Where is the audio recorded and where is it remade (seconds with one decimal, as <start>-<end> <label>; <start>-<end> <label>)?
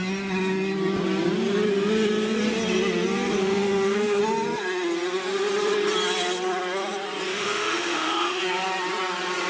0.0-3.4 recorded; 3.4-4.2 remade; 4.2-7.3 recorded; 7.3-8.4 remade; 8.4-9.5 recorded